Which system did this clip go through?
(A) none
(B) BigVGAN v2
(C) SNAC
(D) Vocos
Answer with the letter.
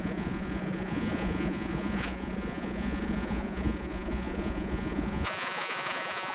D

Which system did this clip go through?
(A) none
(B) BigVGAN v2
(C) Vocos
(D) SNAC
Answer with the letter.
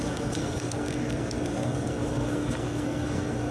D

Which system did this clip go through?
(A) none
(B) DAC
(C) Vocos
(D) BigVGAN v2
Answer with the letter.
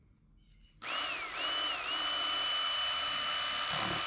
A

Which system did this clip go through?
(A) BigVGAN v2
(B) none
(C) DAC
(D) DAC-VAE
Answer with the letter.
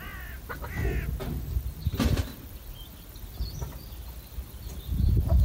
B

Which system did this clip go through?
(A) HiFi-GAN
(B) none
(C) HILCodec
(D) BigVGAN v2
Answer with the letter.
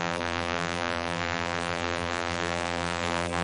D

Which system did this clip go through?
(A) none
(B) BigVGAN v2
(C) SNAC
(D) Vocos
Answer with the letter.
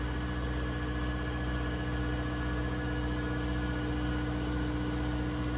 A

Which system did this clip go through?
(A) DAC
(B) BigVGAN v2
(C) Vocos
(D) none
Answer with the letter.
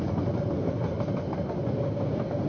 D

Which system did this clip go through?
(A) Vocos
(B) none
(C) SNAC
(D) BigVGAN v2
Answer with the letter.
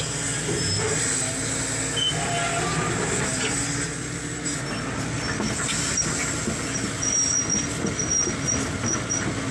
B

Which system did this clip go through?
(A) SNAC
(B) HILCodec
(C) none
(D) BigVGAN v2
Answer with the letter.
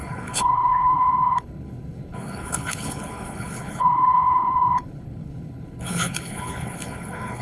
B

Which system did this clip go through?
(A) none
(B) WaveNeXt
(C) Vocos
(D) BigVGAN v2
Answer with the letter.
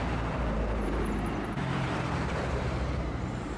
D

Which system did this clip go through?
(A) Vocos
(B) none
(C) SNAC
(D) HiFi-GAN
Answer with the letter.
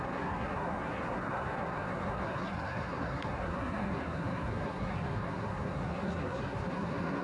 C